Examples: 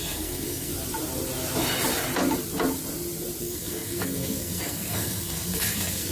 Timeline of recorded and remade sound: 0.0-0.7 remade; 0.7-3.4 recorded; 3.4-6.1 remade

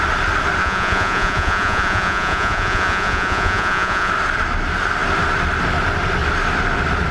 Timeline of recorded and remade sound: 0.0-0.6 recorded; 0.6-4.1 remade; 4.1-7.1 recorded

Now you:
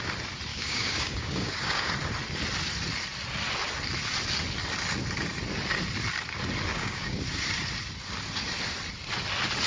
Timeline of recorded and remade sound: 0.0-0.5 recorded; 0.5-1.9 remade; 1.9-6.7 recorded; 6.7-7.2 remade; 7.2-9.7 recorded

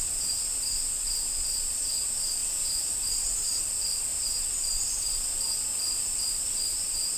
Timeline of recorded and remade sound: 0.0-2.4 recorded; 2.4-3.6 remade; 3.6-7.2 recorded

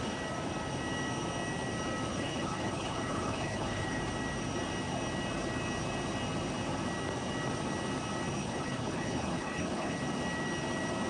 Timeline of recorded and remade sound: 0.0-2.1 recorded; 2.1-4.0 remade; 4.0-8.4 recorded; 8.4-10.0 remade; 10.0-11.1 recorded